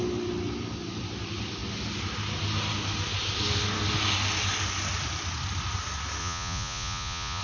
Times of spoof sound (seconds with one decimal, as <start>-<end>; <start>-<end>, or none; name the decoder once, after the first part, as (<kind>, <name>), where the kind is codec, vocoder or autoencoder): 6.2-7.4 (vocoder, Vocos)